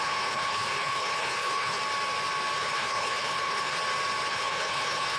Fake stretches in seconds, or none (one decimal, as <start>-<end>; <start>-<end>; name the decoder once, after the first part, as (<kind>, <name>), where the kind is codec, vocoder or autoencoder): 0.0-1.8 (codec, HILCodec); 2.6-3.8; 4.3-5.2